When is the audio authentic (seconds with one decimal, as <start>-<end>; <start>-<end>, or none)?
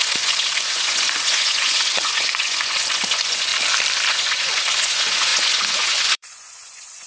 3.5-4.1